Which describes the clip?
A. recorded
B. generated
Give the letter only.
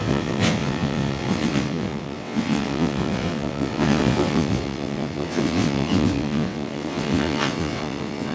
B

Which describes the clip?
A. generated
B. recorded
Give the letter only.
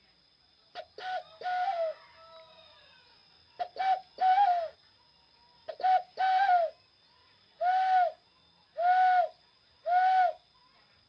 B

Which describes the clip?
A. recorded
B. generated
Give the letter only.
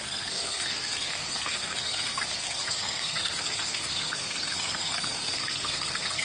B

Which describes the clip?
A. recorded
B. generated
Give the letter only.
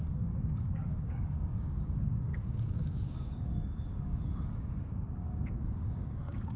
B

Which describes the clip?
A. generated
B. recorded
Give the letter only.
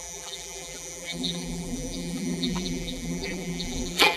A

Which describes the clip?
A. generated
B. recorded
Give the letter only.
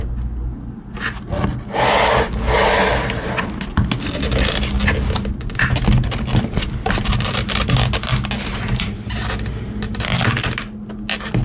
B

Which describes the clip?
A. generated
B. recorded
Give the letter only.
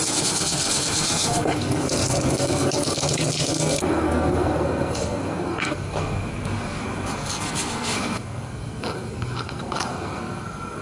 A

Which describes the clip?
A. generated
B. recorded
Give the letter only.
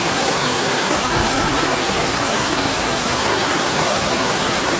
A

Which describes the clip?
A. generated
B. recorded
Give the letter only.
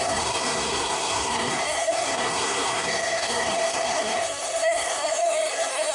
A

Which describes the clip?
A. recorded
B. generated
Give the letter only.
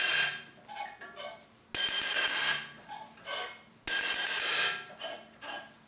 A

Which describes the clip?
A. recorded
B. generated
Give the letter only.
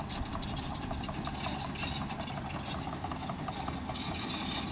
A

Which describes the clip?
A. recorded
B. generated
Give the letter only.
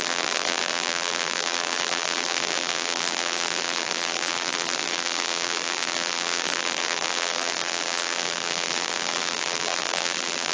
B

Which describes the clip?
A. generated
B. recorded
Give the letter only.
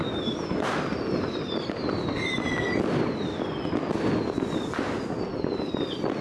B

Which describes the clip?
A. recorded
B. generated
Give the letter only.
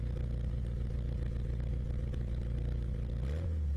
A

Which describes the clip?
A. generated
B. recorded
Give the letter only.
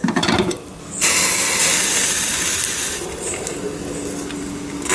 B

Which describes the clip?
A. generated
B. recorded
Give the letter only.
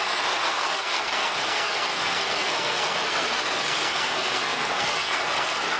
A